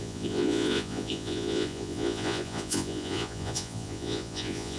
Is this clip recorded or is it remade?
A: remade